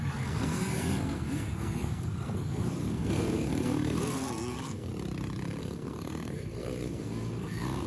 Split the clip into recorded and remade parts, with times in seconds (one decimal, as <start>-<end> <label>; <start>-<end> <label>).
0.0-4.9 remade; 4.9-5.6 recorded; 5.6-7.9 remade